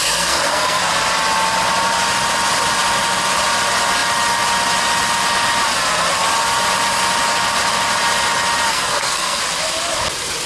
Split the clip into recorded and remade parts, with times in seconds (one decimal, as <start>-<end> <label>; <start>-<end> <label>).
0.0-0.9 remade; 0.9-8.7 recorded; 8.7-9.4 remade; 9.4-10.5 recorded